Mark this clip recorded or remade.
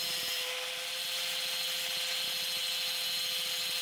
recorded